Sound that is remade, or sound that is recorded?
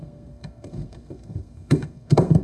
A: remade